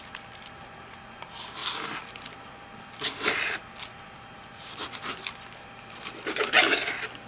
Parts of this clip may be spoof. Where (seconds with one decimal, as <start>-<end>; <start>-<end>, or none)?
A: 1.6-6.0